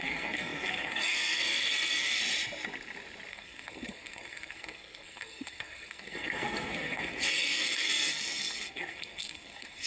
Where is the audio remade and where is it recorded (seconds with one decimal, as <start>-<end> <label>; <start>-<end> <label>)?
0.0-2.2 remade; 2.2-3.3 recorded; 3.3-9.9 remade